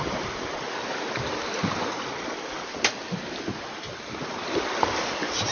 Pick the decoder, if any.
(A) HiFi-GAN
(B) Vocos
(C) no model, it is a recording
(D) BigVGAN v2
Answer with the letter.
C